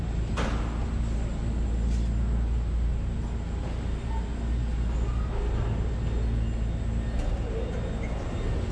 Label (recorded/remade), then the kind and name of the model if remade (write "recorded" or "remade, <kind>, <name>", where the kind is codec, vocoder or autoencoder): recorded